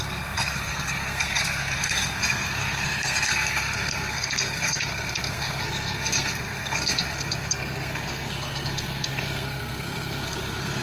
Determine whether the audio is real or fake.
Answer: fake